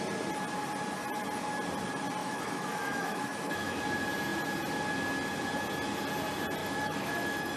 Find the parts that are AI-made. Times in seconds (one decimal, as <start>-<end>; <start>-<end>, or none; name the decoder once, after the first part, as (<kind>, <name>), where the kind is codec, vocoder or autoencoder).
2.2-3.8 (autoencoder, DAC-VAE); 6.6-7.6